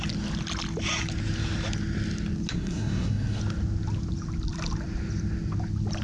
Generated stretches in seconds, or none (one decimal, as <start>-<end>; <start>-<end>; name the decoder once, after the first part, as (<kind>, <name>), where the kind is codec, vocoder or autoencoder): 2.5-3.4 (codec, SNAC)